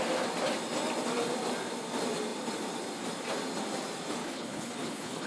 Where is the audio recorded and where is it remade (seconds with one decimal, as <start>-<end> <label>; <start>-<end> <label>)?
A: 0.0-4.2 recorded; 4.2-5.3 remade